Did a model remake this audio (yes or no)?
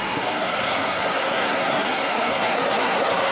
yes